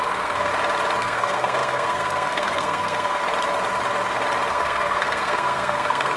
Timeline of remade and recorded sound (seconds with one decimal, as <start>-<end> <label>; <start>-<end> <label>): 0.0-0.5 remade; 0.5-1.0 recorded; 1.0-3.2 remade; 3.2-4.5 recorded; 4.5-6.2 remade